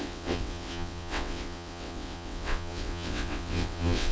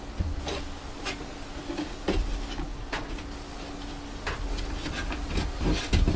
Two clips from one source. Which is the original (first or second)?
second